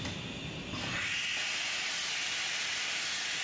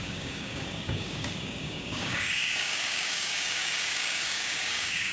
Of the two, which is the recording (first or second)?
first